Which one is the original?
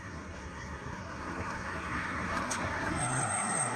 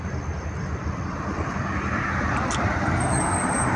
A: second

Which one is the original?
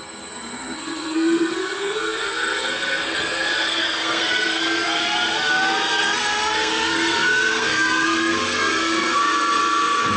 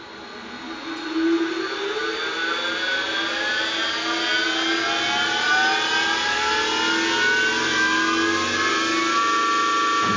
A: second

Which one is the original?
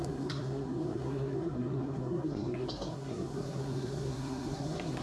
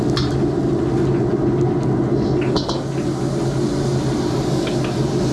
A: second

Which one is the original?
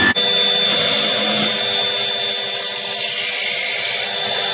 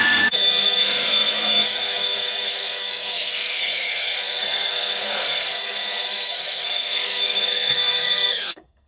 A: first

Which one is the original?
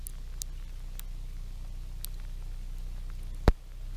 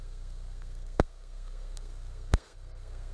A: first